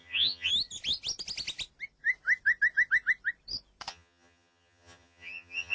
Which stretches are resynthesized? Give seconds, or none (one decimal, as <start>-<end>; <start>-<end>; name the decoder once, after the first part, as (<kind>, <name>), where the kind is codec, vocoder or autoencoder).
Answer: 0.0-0.5 (vocoder, HiFi-GAN); 3.9-5.7